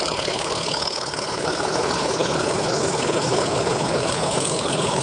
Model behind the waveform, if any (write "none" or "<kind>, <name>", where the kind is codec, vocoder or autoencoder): codec, HILCodec